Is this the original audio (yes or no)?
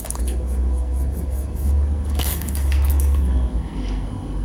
no